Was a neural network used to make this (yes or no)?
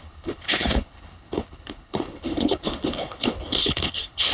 yes